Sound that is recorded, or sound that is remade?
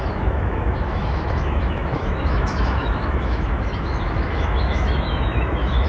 remade